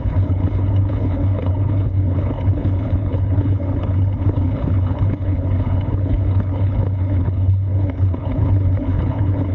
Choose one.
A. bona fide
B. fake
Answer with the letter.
B